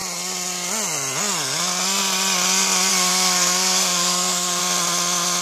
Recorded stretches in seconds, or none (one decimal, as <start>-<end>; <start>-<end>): 0.0-2.9; 4.6-5.4